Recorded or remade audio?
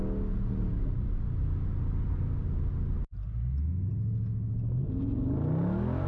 recorded